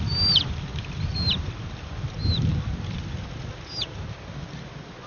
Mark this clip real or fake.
real